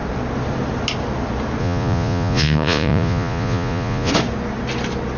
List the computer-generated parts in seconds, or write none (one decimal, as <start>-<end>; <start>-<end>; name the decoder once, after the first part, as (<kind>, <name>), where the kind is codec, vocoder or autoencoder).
1.6-4.1 (vocoder, Vocos)